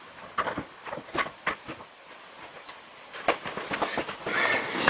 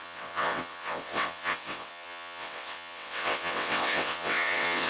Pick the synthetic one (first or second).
second